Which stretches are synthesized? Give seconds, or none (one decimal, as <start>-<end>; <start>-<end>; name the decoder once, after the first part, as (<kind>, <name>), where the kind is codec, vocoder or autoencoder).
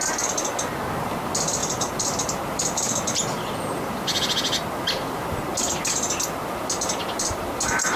1.6-3.3 (vocoder, BigVGAN v2)